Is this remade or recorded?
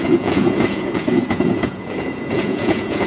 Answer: remade